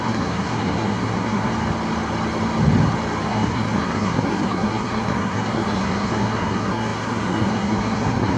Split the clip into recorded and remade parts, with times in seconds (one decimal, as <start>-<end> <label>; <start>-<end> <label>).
0.0-1.5 remade; 1.5-3.2 recorded; 3.2-8.4 remade